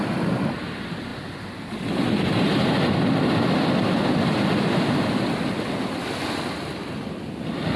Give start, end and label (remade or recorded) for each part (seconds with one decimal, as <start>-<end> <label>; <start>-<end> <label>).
0.0-1.1 remade; 1.1-2.7 recorded; 2.7-7.8 remade

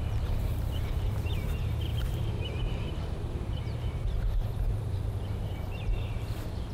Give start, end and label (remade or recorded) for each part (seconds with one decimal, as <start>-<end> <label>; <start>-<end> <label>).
0.0-6.7 remade

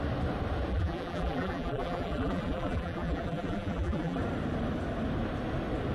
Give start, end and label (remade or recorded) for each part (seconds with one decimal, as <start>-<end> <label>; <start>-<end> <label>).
0.0-0.7 recorded; 0.7-4.2 remade; 4.2-5.9 recorded

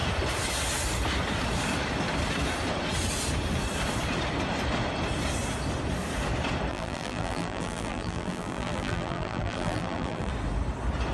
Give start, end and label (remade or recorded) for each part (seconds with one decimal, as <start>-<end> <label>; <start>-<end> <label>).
0.0-6.7 recorded; 6.7-10.3 remade; 10.3-11.1 recorded